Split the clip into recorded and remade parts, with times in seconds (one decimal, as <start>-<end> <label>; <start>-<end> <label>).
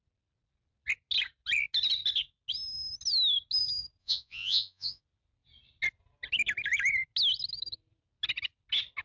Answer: 0.0-4.0 recorded; 4.0-5.0 remade; 5.0-9.0 recorded